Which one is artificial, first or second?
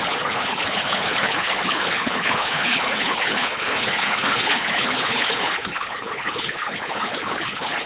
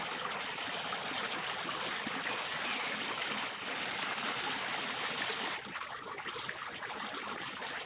first